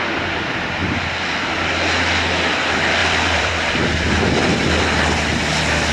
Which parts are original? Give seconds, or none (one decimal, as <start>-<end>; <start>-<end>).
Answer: 0.0-3.0; 4.7-5.9